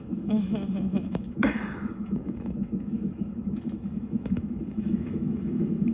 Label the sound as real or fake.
fake